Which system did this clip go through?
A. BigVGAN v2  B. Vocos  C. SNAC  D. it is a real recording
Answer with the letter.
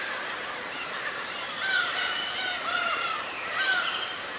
A